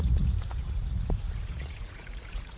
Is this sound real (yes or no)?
no